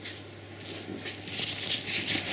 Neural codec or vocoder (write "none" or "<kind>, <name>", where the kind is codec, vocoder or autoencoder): none